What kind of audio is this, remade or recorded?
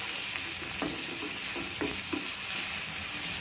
recorded